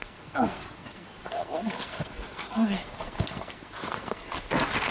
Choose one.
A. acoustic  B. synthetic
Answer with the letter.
B